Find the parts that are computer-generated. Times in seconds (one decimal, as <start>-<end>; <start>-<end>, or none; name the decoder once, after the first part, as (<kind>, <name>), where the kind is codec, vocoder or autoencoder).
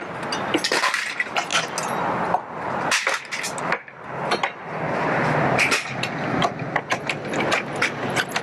none